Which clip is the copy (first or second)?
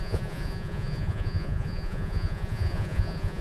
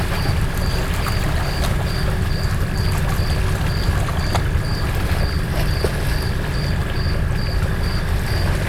first